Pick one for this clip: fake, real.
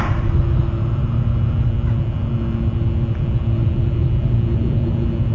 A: real